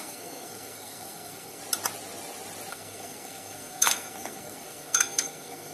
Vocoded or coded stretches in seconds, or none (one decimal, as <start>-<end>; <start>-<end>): 0.0-1.6; 2.7-5.7